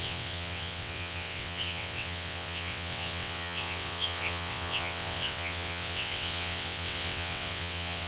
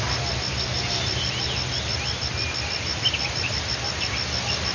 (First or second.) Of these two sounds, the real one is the second